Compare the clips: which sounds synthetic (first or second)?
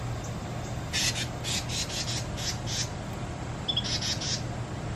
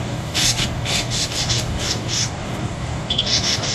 second